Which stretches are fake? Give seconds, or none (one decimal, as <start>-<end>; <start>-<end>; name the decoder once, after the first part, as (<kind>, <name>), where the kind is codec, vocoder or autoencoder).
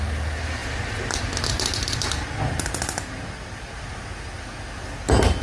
none